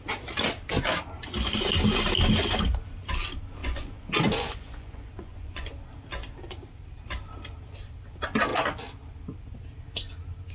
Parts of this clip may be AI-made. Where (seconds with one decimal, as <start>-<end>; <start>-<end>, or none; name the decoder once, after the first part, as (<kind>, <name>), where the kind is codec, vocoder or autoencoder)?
3.6-5.7 (vocoder, Vocos)